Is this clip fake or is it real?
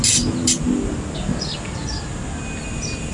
real